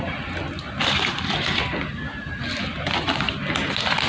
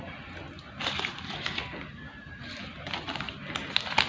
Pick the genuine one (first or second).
second